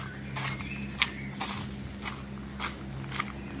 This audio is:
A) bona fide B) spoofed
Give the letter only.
A